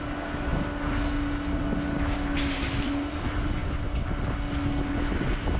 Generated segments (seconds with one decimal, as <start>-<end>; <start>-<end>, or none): none